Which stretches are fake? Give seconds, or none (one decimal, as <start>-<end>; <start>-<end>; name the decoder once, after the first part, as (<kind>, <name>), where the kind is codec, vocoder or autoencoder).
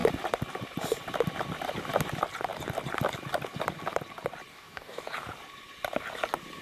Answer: 4.5-5.0 (codec, DAC)